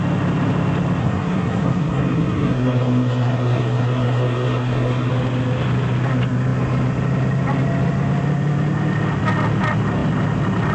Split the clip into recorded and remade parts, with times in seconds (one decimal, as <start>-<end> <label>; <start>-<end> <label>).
0.0-1.0 recorded; 1.0-5.1 remade; 5.1-10.7 recorded